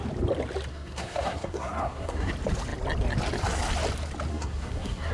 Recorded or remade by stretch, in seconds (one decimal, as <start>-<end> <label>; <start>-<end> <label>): 0.0-0.7 recorded; 0.7-2.3 remade; 2.3-4.3 recorded; 4.3-5.1 remade